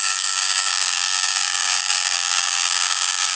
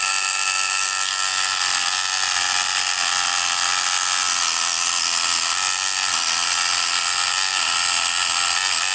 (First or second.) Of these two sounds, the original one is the second